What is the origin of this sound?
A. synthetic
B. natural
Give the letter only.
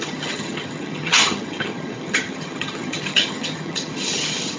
A